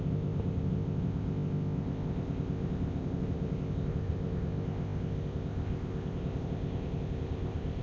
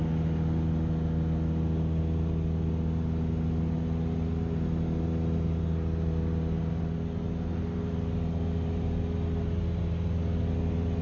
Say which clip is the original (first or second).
second